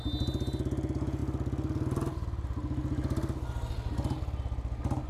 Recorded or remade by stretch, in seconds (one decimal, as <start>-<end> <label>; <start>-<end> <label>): 0.0-5.1 recorded